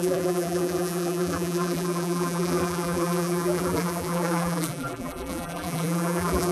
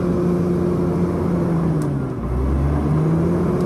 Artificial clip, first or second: first